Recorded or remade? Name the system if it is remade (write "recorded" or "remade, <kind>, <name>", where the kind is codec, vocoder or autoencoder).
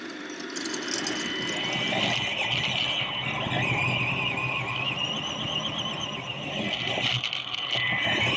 recorded